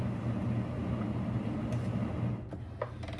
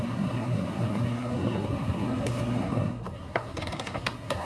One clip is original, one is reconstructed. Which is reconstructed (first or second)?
second